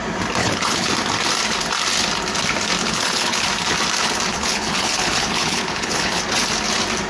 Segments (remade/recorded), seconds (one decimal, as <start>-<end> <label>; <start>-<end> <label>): 0.0-0.4 recorded; 0.4-0.9 remade; 0.9-2.8 recorded; 2.8-3.5 remade; 3.5-4.3 recorded; 4.3-6.2 remade; 6.2-7.1 recorded

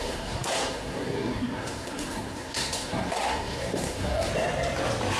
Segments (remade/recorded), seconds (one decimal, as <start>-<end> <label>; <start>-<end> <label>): 0.0-4.3 remade; 4.3-5.2 recorded